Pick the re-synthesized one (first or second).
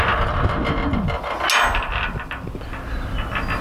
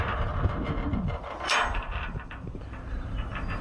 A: second